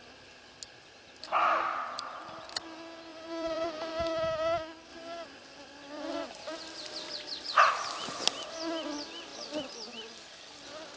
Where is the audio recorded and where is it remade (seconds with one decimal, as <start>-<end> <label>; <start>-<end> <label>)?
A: 0.0-3.1 recorded; 3.1-3.9 remade; 3.9-4.9 recorded; 4.9-7.6 remade; 7.6-11.0 recorded